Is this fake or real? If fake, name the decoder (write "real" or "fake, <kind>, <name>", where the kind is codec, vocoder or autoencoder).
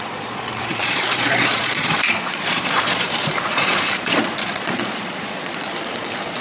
fake, vocoder, Vocos